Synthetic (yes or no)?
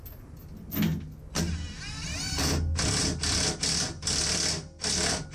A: no